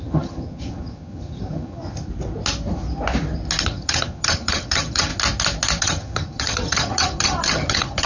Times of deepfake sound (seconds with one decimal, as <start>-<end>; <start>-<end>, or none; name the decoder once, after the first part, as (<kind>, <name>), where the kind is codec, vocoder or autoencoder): 0.0-2.1 (vocoder, HiFi-GAN); 3.6-5.1; 5.8-8.1